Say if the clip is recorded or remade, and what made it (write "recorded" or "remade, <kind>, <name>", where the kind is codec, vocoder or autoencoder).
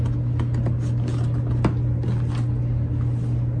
recorded